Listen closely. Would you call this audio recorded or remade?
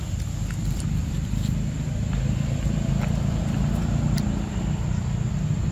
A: recorded